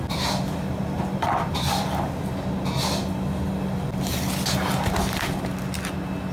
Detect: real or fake real